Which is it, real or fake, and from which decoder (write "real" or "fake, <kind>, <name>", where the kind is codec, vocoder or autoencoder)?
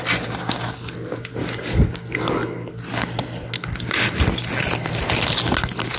real